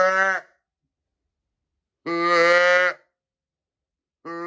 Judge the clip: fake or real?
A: real